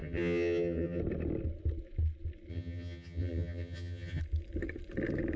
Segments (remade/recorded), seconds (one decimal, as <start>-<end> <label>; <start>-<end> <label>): 0.0-1.0 remade; 1.0-2.5 recorded; 2.5-4.2 remade; 4.2-5.4 recorded